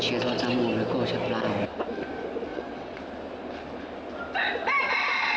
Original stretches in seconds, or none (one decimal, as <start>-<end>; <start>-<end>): 0.0-2.5; 3.0-5.4